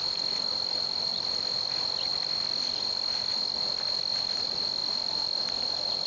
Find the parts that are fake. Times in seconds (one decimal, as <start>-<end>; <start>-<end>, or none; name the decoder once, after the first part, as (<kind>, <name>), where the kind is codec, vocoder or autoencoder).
0.0-2.1 (vocoder, BigVGAN v2); 2.9-3.3; 4.2-4.8; 5.4-6.1